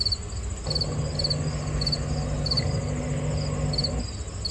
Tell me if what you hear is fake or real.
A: real